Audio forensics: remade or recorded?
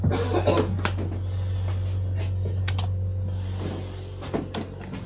recorded